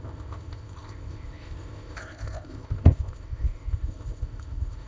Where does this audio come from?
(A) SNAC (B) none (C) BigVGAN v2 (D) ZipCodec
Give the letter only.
D